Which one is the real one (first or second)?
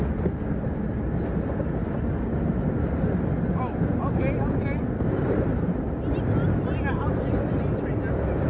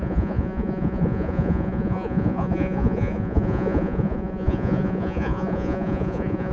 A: first